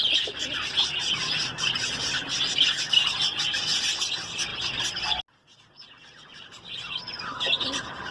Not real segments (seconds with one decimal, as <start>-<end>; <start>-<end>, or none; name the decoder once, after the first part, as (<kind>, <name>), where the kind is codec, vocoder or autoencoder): none